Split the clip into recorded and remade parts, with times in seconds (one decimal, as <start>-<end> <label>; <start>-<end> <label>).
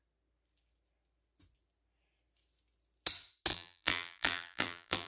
0.0-3.5 recorded; 3.5-5.1 remade